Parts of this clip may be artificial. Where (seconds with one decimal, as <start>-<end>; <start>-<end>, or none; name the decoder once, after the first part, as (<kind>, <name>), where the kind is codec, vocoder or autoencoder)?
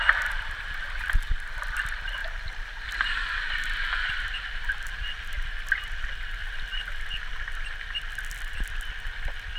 0.0-6.4 (vocoder, BigVGAN v2); 7.2-9.6